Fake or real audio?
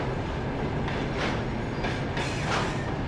real